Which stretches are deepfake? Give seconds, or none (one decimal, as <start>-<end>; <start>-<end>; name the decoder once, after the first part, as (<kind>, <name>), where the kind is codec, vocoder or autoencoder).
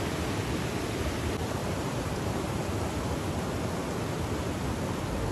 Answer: 1.6-2.6 (vocoder, BigVGAN v2)